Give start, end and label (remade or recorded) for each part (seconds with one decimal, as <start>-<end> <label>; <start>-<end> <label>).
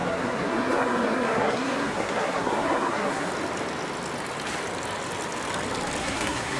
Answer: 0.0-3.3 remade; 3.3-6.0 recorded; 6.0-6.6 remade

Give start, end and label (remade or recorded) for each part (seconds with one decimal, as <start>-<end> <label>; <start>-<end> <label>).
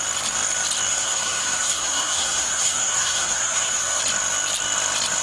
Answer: 0.0-0.9 recorded; 0.9-4.0 remade; 4.0-5.2 recorded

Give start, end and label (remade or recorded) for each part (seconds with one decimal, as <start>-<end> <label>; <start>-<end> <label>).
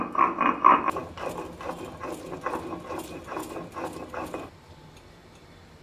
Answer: 0.0-5.8 recorded